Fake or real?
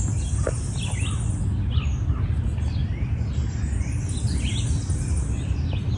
real